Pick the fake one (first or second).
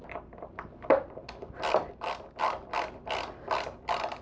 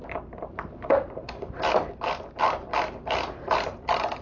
second